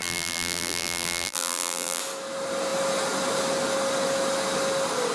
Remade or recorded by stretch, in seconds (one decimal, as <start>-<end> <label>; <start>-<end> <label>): 0.0-2.0 remade; 2.0-5.1 recorded